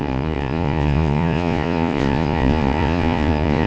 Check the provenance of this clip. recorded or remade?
remade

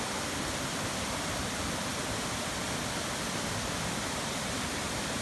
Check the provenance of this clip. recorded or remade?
recorded